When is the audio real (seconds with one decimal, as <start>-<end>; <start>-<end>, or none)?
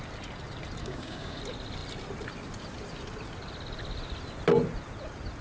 0.0-0.8; 1.4-5.4